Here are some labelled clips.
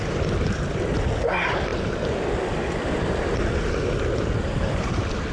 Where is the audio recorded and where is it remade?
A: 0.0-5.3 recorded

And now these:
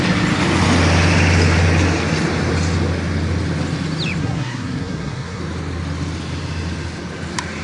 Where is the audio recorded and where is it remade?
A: 0.0-4.2 recorded; 4.2-5.4 remade; 5.4-7.6 recorded

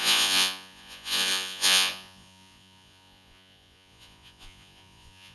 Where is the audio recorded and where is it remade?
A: 0.0-5.3 remade

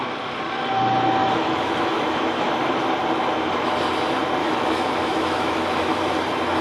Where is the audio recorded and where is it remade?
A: 0.0-1.2 recorded; 1.2-2.5 remade; 2.5-4.4 recorded; 4.4-6.0 remade; 6.0-6.6 recorded

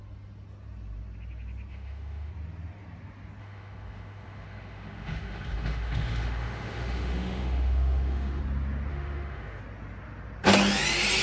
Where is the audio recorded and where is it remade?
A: 0.0-1.7 recorded; 1.7-2.3 remade; 2.3-3.4 recorded; 3.4-8.4 remade; 8.4-8.9 recorded; 8.9-9.6 remade; 9.6-11.2 recorded

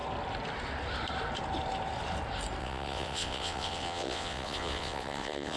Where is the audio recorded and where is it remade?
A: 0.0-2.6 recorded; 2.6-5.6 remade

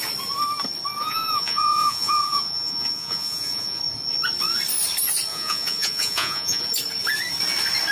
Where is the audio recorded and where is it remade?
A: 0.0-1.0 recorded; 1.0-3.8 remade; 3.8-5.3 recorded; 5.3-6.6 remade; 6.6-7.9 recorded

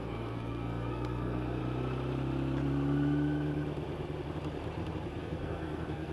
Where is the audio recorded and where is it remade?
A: 0.0-1.6 remade; 1.6-5.2 recorded; 5.2-6.1 remade